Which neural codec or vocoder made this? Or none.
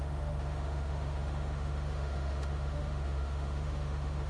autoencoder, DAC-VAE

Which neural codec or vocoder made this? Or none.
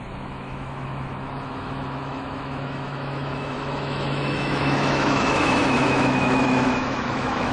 autoencoder, DAC-VAE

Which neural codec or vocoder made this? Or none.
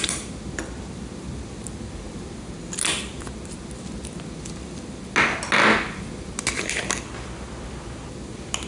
none